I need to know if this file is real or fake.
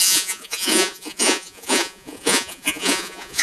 fake